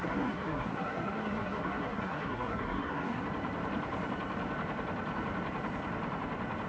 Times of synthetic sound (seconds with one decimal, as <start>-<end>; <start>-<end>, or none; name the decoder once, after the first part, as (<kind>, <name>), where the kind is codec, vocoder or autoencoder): 0.0-3.2 (codec, SNAC)

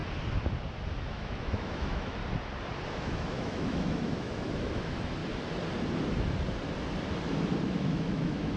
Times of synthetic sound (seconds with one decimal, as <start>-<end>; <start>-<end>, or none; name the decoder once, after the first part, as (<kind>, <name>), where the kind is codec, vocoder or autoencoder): 1.1-2.2 (autoencoder, DAC-VAE); 2.9-5.2; 7.6-8.6

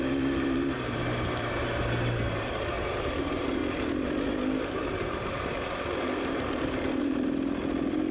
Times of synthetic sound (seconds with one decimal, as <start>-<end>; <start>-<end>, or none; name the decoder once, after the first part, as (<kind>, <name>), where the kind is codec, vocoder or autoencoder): 0.0-3.6 (vocoder, BigVGAN v2); 4.8-8.1